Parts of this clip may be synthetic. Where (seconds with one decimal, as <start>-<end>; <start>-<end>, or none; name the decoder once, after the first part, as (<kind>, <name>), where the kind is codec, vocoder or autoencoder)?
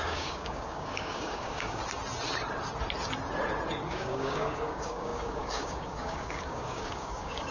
0.0-1.8 (codec, DAC); 3.9-7.5